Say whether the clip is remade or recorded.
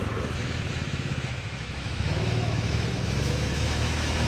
remade